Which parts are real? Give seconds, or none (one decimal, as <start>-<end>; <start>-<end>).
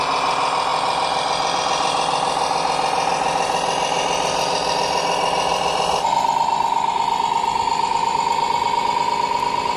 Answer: 0.0-0.7; 1.6-9.8